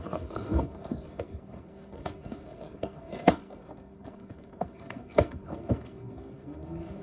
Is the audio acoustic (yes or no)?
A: no